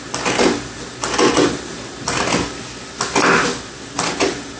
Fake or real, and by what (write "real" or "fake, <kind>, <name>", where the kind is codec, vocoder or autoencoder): real